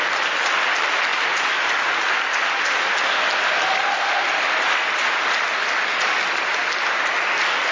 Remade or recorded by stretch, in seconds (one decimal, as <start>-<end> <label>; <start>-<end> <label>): 0.0-7.7 recorded